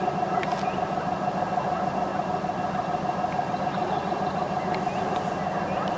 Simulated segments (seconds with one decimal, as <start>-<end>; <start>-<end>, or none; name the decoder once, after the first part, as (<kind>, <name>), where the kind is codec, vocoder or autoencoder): none

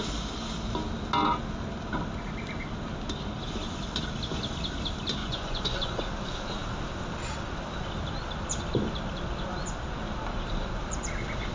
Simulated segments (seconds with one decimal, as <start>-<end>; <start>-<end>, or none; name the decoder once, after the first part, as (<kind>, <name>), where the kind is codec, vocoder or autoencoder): 5.2-6.0 (vocoder, Vocos)

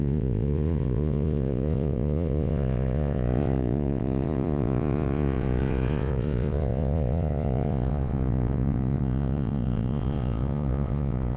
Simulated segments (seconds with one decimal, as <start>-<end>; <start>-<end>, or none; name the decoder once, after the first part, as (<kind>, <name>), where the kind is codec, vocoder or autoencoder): 0.0-11.4 (vocoder, Vocos)

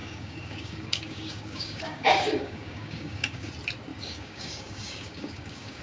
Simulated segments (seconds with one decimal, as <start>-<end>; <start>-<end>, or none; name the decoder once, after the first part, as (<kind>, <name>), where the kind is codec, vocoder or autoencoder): 0.0-3.5 (codec, DAC); 3.9-5.8

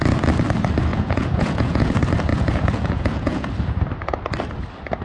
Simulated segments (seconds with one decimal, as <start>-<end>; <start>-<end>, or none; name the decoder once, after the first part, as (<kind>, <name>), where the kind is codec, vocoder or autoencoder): 0.9-1.9 (vocoder, Vocos); 2.3-3.5

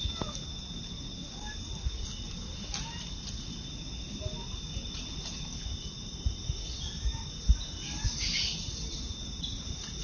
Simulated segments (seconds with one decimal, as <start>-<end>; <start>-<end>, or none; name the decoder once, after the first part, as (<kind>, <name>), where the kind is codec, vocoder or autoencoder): none